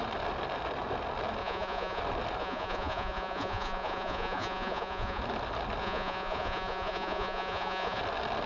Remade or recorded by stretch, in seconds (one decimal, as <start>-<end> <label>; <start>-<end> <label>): 0.0-1.4 recorded; 1.4-2.0 remade; 2.0-2.4 recorded; 2.4-5.2 remade; 5.2-5.8 recorded; 5.8-8.0 remade; 8.0-8.5 recorded